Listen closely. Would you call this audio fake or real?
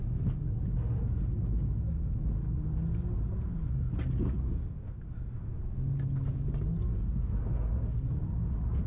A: real